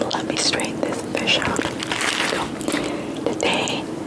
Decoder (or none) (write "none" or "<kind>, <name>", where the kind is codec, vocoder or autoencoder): none